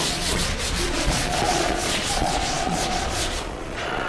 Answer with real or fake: fake